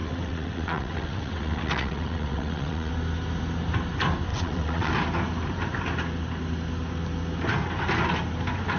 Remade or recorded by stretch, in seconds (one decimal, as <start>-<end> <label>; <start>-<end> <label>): 0.0-2.9 remade; 2.9-4.3 recorded; 4.3-4.9 remade; 4.9-8.8 recorded

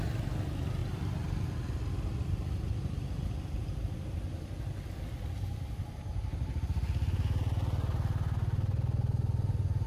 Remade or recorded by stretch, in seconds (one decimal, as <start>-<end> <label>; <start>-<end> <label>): 0.0-9.9 recorded

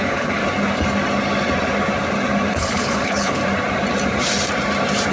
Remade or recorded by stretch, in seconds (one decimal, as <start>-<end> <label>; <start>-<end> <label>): 0.0-0.4 remade; 0.4-2.5 recorded; 2.5-3.4 remade; 3.4-5.1 recorded